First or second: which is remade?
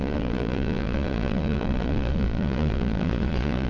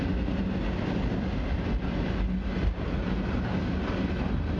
first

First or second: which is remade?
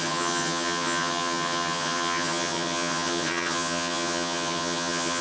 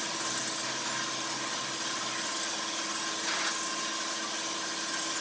first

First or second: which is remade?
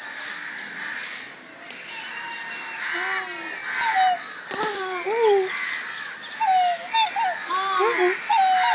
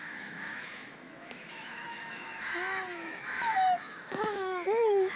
second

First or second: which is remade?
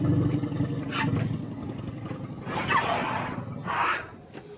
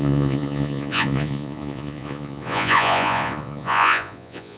second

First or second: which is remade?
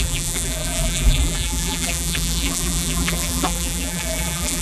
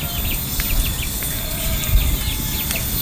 first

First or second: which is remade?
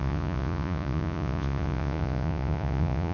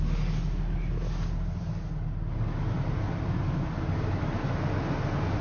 first